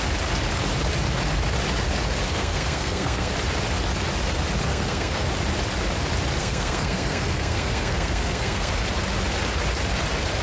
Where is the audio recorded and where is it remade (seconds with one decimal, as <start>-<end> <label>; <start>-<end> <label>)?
0.0-2.3 recorded; 2.3-3.3 remade; 3.3-4.7 recorded; 4.7-5.3 remade; 5.3-6.4 recorded; 6.4-8.7 remade; 8.7-10.4 recorded